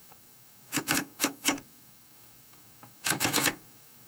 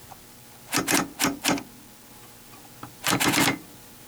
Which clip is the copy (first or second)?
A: first